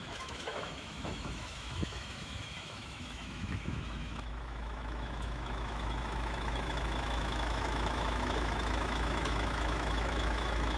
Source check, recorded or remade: remade